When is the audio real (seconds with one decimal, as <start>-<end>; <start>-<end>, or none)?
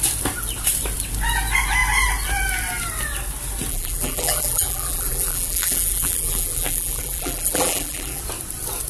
0.0-3.7; 8.2-8.9